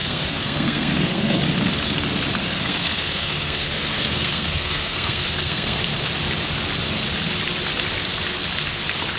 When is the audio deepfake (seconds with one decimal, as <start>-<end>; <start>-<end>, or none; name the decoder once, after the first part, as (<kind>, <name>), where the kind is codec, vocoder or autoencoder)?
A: 0.0-1.4 (codec, SNAC); 2.4-5.8